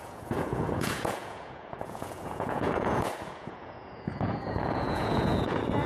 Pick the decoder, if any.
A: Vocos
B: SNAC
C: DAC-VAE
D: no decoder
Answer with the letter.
A